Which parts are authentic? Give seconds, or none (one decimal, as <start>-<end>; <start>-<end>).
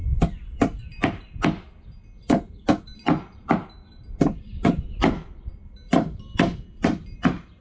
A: 0.0-2.9